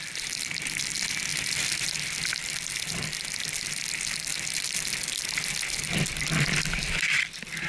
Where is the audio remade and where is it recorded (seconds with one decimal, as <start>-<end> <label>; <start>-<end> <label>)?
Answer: 0.0-7.7 recorded